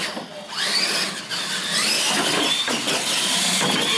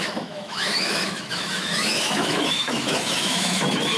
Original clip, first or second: first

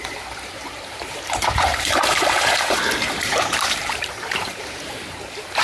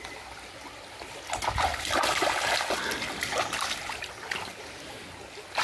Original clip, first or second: second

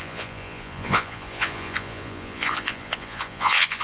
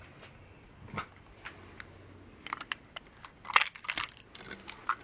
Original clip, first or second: second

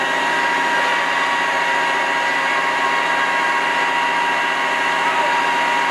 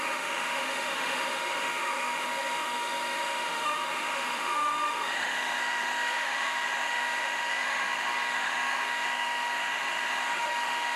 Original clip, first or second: first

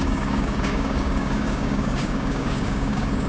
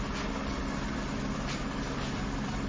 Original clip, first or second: second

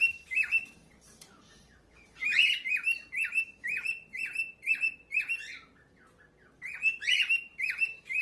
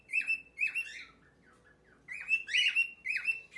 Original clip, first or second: second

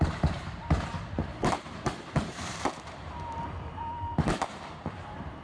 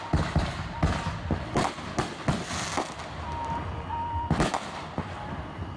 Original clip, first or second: second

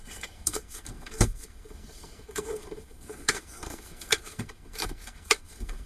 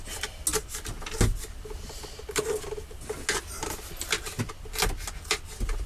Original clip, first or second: second